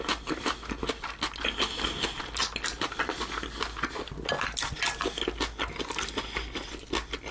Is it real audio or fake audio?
real